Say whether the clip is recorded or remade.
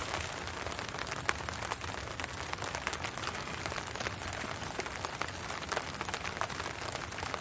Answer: recorded